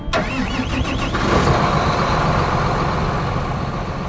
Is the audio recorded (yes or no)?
yes